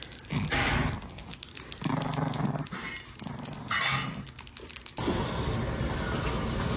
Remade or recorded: recorded